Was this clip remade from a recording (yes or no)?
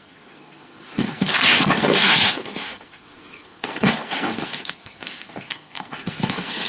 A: yes